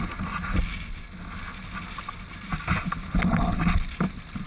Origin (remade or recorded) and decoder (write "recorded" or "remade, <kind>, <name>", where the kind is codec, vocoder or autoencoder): recorded